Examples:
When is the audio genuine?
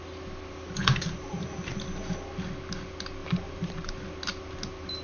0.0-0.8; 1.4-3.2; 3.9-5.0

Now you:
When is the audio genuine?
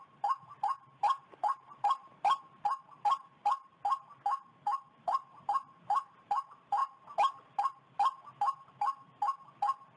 3.4-4.8; 6.8-10.0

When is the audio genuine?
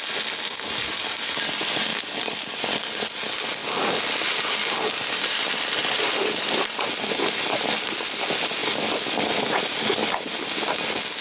0.0-1.9; 3.2-3.6; 8.2-8.6; 9.3-11.2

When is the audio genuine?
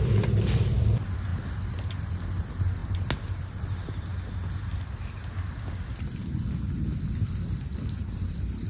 0.0-8.7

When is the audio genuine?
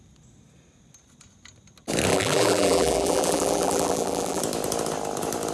0.0-2.1; 4.4-5.5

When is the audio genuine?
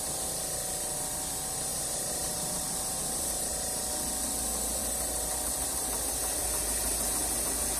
0.0-1.7; 3.0-7.8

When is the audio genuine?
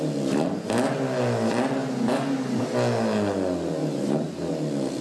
0.0-3.8; 4.5-5.0